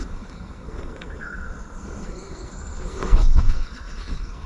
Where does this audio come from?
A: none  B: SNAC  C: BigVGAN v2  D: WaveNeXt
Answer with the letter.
B